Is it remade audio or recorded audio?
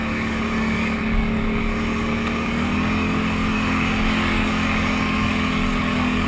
remade